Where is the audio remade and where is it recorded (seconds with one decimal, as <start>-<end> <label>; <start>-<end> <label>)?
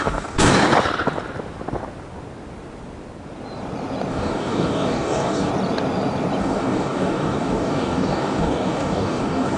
0.0-0.5 remade; 0.5-4.1 recorded; 4.1-5.5 remade; 5.5-6.4 recorded; 6.4-9.6 remade